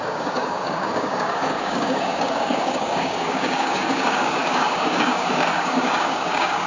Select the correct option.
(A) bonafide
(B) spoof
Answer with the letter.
B